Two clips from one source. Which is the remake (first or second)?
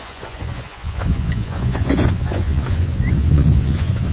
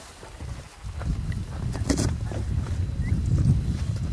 first